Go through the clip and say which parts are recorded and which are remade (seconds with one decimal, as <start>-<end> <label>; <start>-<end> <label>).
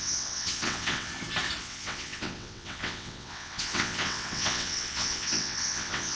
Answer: 0.0-1.1 remade; 1.1-1.6 recorded; 1.6-6.1 remade